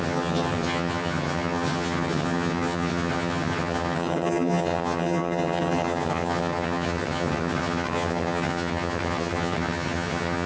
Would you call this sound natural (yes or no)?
no